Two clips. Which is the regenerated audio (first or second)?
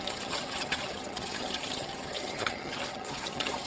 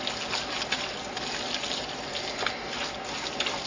first